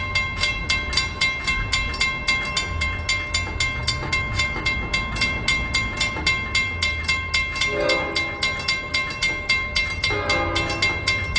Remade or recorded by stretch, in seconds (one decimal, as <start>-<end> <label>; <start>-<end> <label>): 0.0-11.4 recorded